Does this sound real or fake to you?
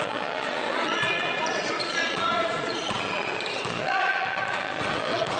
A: fake